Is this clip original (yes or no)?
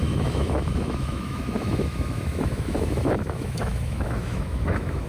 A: no